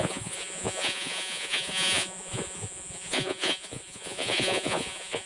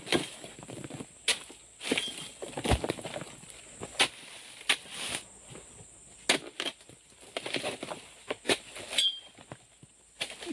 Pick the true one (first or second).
second